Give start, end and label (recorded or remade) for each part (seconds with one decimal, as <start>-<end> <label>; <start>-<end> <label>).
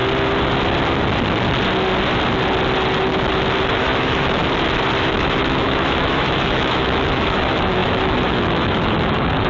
0.0-3.6 recorded; 3.6-4.4 remade; 4.4-5.0 recorded; 5.0-9.5 remade